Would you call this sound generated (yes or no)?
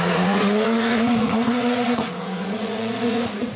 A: yes